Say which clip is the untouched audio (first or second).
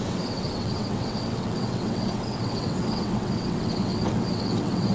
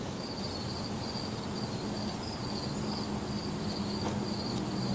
second